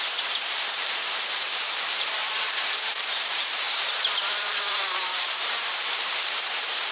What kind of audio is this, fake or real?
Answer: fake